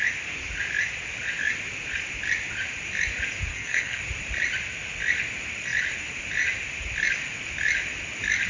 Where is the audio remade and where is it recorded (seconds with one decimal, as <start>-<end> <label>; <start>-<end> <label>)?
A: 0.0-3.5 recorded; 3.5-4.0 remade; 4.0-8.5 recorded